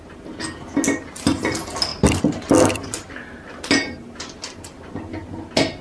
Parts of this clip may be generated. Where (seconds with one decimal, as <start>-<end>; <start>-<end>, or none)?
1.9-3.1